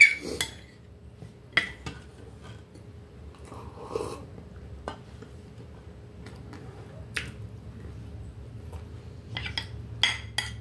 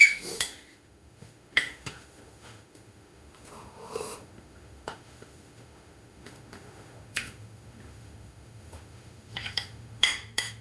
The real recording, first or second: first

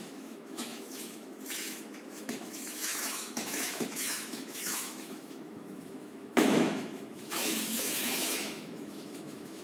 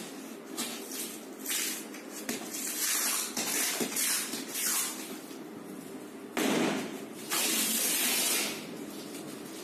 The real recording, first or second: second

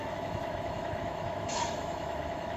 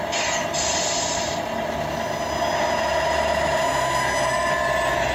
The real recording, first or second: second